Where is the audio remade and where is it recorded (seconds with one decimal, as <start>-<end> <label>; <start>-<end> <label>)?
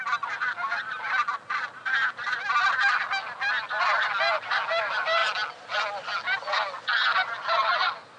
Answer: 0.0-8.2 recorded